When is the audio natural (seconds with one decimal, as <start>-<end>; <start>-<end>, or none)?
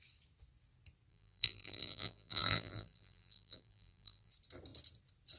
0.0-1.1; 4.3-5.4